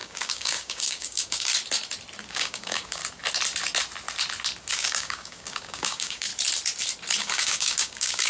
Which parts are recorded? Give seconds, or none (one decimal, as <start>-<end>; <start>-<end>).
1.5-2.3; 3.0-4.7; 6.3-7.2